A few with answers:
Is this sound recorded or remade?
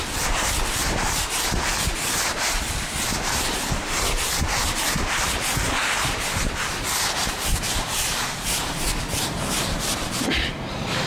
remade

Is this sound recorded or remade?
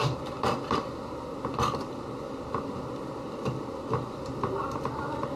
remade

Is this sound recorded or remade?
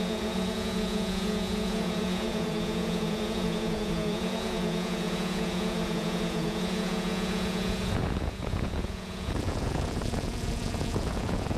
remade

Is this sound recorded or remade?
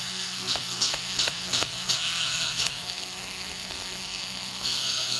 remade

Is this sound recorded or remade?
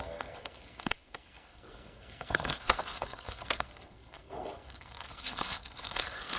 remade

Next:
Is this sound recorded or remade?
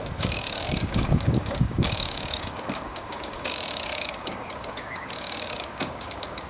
remade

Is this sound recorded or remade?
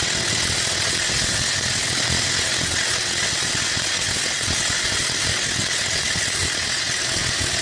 remade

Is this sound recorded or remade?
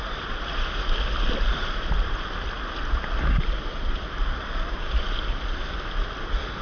recorded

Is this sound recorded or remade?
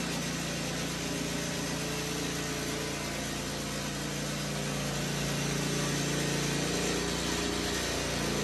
recorded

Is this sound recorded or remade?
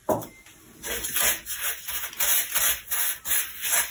recorded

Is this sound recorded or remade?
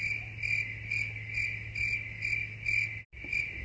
recorded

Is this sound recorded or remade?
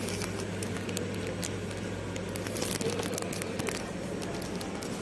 recorded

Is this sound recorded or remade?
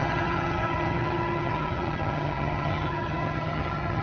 remade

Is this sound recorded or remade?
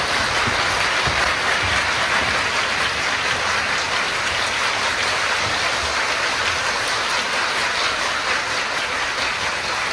recorded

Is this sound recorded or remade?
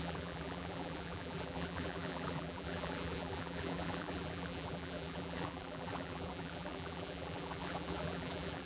remade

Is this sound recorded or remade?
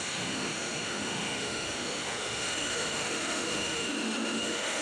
remade